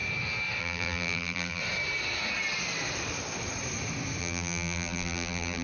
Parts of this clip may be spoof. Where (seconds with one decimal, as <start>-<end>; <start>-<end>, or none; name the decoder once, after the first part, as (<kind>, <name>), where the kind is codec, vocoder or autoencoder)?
0.6-1.6 (vocoder, BigVGAN v2); 4.2-5.6